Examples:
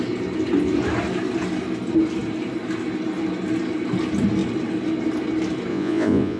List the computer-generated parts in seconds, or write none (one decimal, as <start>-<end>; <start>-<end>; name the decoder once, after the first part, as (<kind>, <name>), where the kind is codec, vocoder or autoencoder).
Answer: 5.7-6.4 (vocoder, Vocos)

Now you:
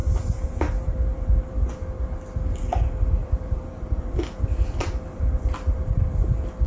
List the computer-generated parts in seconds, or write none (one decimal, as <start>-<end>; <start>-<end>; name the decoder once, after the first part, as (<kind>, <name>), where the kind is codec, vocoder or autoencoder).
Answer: 0.0-0.5 (vocoder, BigVGAN v2); 1.1-1.7; 3.2-6.2

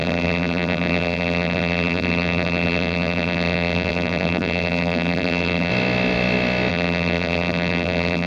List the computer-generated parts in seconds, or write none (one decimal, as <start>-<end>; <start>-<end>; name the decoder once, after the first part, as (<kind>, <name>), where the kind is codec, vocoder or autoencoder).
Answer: 0.0-5.7 (vocoder, BigVGAN v2); 6.7-8.3

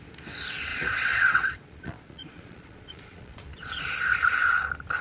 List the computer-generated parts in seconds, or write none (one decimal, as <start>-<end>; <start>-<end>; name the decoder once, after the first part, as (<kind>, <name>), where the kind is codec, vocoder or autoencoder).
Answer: 0.7-3.7 (vocoder, Vocos)

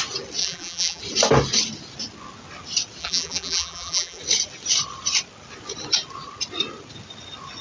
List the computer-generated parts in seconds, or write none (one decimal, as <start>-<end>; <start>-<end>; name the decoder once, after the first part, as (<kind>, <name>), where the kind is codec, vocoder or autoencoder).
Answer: 0.4-1.0 (vocoder, BigVGAN v2); 3.0-4.2